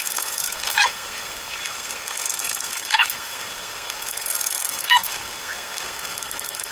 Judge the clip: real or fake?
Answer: fake